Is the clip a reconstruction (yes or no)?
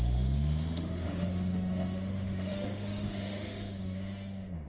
yes